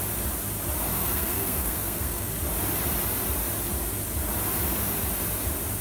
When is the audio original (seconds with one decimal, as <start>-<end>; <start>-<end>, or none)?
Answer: 0.0-0.9; 2.3-5.8